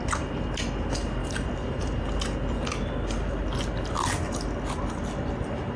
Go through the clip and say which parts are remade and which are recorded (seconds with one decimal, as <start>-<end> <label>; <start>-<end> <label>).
0.0-5.8 recorded